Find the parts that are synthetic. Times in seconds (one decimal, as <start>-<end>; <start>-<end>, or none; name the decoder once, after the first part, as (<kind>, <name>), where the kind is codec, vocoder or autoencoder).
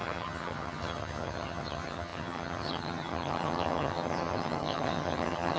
0.0-5.6 (vocoder, HiFi-GAN)